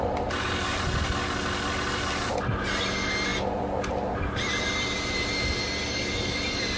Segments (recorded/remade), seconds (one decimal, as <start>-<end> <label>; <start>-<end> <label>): 0.0-6.8 recorded

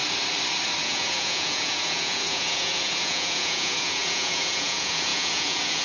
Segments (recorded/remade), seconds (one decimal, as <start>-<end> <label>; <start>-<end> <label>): 0.0-0.8 recorded; 0.8-5.8 remade

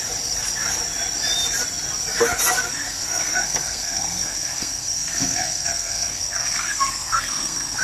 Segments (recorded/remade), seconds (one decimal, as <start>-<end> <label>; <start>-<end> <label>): 0.0-2.7 recorded; 2.7-7.8 remade

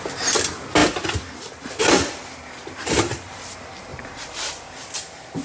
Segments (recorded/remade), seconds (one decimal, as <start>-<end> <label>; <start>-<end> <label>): 0.0-3.9 recorded; 3.9-4.6 remade; 4.6-5.4 recorded

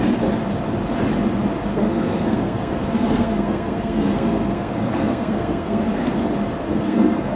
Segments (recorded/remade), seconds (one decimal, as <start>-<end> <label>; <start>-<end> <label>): 0.0-1.7 recorded; 1.7-6.1 remade; 6.1-6.6 recorded; 6.6-7.4 remade

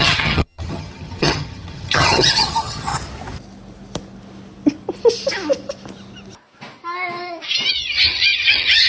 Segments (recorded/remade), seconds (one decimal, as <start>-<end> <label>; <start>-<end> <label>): 0.0-2.9 remade; 2.9-7.7 recorded; 7.7-8.9 remade